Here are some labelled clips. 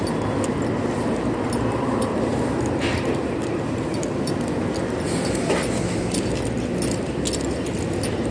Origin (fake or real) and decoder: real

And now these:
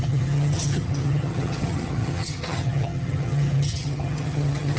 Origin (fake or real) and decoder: fake, vocoder, HiFi-GAN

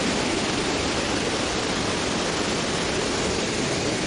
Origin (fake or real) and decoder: real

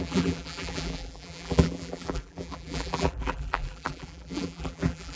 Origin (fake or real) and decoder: fake, vocoder, BigVGAN v2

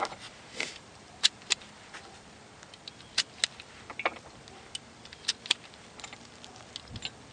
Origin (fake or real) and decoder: real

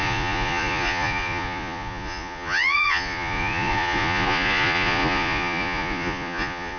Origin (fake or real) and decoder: fake, vocoder, Vocos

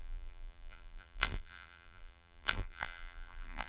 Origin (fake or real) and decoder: fake, vocoder, BigVGAN v2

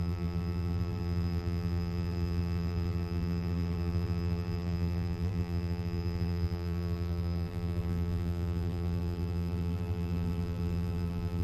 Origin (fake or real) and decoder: fake, vocoder, BigVGAN v2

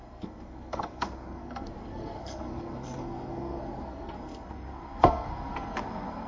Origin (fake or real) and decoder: fake, codec, SNAC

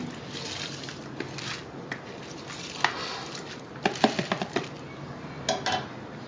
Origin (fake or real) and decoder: real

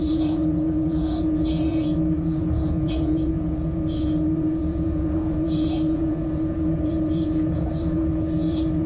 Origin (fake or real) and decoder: fake, vocoder, Vocos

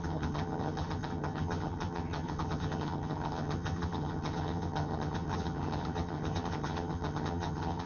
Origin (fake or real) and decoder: fake, vocoder, HiFi-GAN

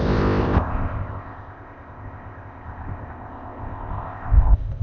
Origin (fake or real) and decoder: fake, codec, ZipCodec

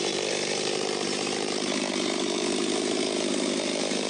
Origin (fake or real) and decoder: fake, vocoder, BigVGAN v2